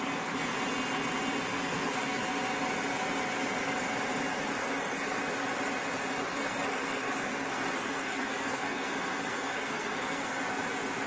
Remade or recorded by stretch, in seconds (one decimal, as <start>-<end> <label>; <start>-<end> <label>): 0.0-1.5 recorded; 1.5-2.2 remade; 2.2-4.6 recorded; 4.6-5.2 remade; 5.2-6.2 recorded; 6.2-10.4 remade; 10.4-11.1 recorded